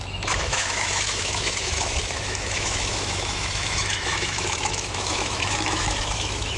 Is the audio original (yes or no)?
no